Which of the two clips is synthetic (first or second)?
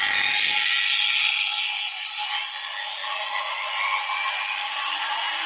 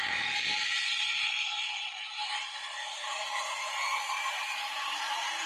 second